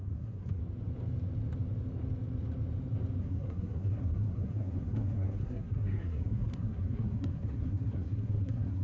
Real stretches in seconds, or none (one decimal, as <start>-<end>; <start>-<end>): 0.6-3.2